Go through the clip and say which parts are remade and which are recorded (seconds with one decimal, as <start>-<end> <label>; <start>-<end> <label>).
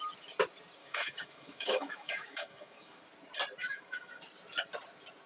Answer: 0.0-0.8 recorded; 0.8-3.0 remade; 3.0-3.6 recorded; 3.6-4.2 remade; 4.2-5.3 recorded